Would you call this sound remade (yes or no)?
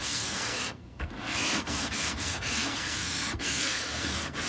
yes